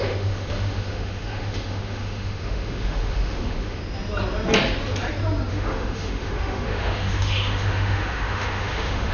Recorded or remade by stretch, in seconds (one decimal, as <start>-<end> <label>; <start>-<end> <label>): 0.0-3.8 remade; 3.8-5.5 recorded; 5.5-9.1 remade